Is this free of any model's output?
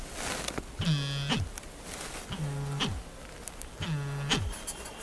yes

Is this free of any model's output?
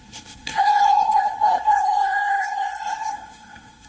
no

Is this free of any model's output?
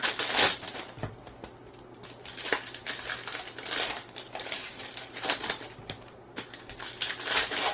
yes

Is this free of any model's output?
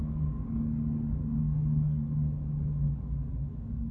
no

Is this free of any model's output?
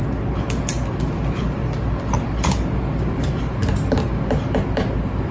yes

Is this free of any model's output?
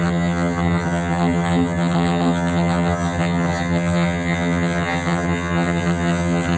no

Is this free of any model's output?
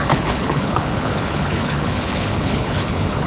no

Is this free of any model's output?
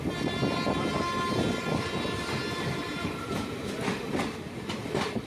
yes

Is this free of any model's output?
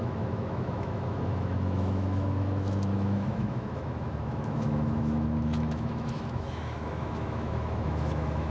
no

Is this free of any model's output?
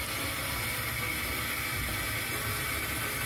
yes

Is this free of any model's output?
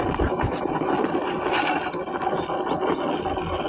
yes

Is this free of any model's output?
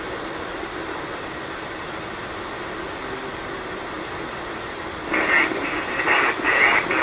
no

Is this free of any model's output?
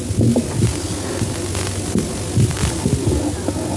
yes